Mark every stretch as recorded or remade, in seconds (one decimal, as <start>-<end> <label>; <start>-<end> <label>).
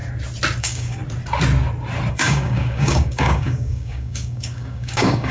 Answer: 0.0-0.6 recorded; 0.6-1.0 remade; 1.0-2.1 recorded; 2.1-5.3 remade